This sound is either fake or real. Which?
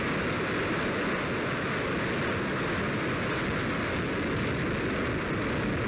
real